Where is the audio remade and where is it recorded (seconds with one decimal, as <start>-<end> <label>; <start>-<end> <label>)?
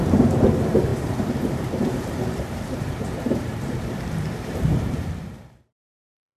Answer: 0.0-6.4 remade